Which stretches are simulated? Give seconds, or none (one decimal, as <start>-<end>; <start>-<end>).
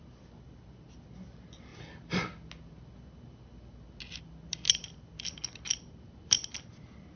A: none